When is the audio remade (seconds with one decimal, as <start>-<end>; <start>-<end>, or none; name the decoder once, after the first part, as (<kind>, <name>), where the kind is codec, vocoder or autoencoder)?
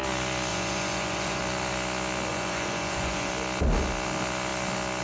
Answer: 0.5-1.4 (vocoder, Vocos); 2.3-3.3